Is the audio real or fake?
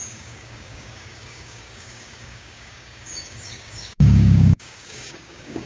fake